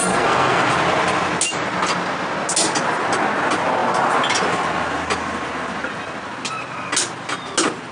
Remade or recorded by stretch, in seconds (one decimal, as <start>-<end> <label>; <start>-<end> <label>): 0.0-0.7 remade; 0.7-7.9 recorded